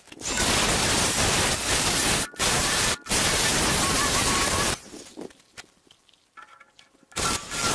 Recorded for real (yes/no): yes